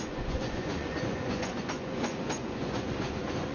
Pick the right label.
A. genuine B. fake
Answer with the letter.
B